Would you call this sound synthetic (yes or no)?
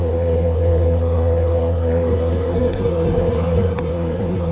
yes